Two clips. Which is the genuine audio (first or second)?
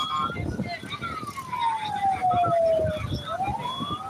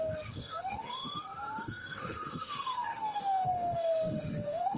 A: first